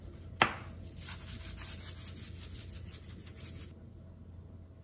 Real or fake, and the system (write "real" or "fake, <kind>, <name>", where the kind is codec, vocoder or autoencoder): real